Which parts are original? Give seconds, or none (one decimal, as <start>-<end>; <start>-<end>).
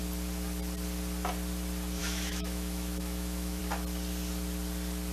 0.0-2.0; 3.6-5.1